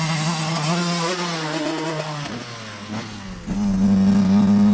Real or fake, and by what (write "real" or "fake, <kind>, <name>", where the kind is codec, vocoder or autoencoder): real